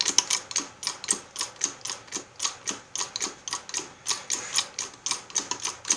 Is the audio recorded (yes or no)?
yes